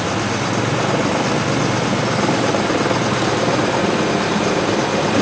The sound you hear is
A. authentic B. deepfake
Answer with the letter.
A